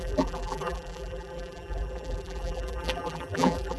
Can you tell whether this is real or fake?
fake